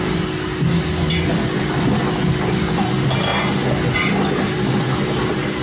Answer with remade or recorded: recorded